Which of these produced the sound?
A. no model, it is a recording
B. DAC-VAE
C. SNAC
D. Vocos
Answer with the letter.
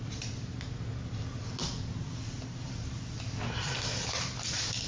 A